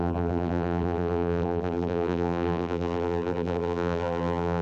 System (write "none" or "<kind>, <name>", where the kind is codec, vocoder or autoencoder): vocoder, BigVGAN v2